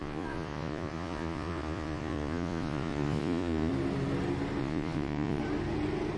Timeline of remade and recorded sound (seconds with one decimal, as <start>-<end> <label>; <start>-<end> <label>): 0.0-3.7 remade; 3.7-4.6 recorded; 4.6-5.4 remade; 5.4-6.2 recorded